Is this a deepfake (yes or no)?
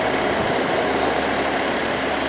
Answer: no